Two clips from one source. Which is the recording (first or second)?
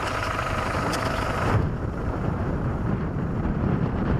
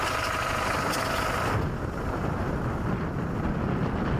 second